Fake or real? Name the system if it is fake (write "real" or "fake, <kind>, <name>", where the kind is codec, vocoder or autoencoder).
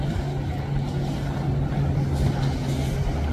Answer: real